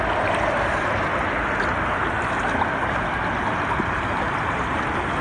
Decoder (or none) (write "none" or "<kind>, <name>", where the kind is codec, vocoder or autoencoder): none